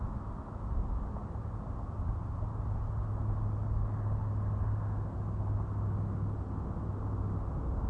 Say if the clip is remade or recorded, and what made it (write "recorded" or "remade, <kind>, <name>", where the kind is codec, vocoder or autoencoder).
recorded